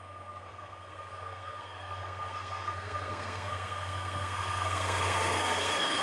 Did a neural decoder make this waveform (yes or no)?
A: yes